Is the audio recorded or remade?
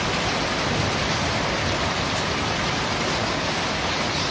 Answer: recorded